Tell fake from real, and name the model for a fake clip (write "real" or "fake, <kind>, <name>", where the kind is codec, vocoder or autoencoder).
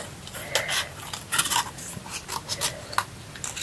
real